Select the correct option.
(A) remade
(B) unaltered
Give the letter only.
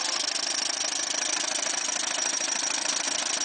B